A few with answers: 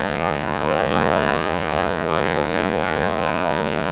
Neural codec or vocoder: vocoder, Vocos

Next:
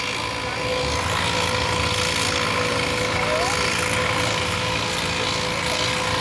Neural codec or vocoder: none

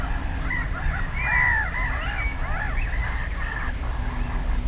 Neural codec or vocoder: none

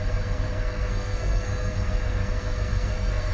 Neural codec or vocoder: codec, SNAC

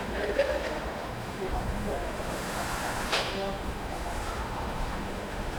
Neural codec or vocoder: autoencoder, DAC-VAE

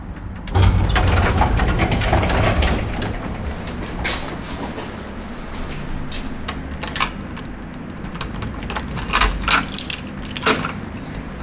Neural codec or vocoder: none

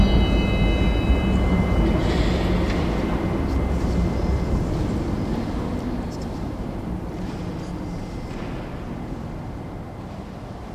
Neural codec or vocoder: none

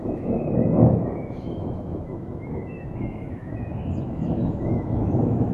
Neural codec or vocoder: autoencoder, DAC-VAE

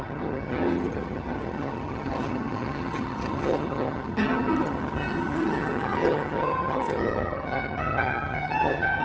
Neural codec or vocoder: vocoder, HiFi-GAN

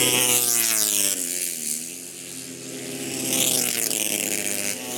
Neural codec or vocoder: none